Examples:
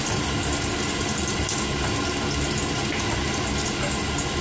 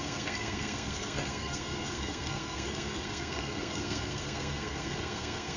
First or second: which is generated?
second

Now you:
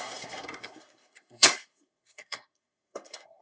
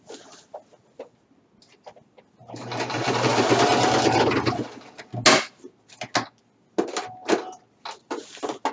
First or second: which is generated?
first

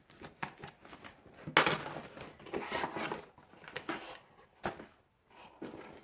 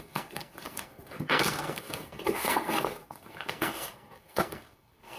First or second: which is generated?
second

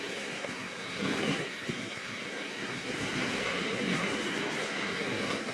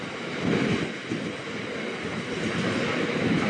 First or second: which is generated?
first